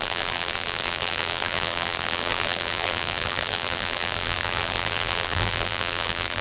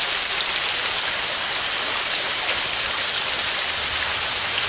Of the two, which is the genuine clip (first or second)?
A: second